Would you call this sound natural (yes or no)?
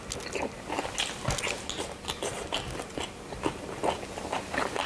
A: yes